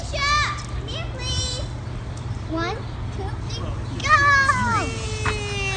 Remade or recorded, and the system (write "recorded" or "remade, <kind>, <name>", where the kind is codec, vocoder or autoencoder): recorded